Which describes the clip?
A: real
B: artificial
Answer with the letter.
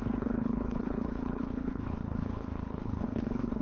B